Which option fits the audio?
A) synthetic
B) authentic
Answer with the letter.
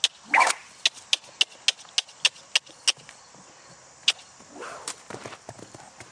B